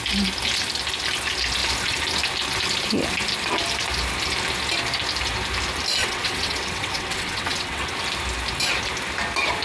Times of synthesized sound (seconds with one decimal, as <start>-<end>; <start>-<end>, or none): 6.0-7.9